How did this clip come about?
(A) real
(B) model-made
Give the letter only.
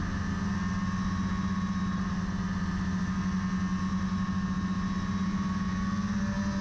A